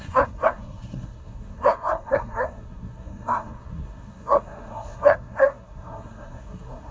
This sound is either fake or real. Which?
fake